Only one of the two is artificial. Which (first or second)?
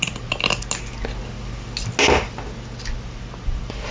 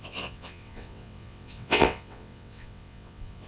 second